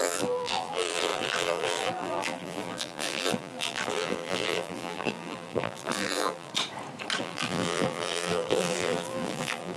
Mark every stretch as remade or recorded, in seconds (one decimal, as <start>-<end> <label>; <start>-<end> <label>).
0.0-6.5 remade; 6.5-7.2 recorded; 7.2-9.8 remade